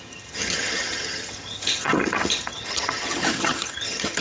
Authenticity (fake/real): fake